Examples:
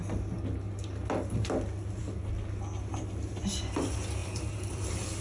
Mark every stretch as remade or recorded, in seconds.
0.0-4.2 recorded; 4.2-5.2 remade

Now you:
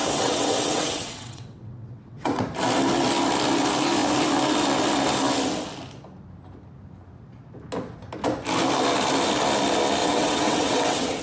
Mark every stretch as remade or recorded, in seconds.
0.0-2.4 remade; 2.4-10.0 recorded; 10.0-11.2 remade